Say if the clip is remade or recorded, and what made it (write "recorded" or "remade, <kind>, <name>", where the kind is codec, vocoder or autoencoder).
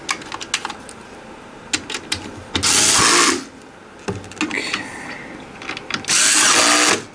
recorded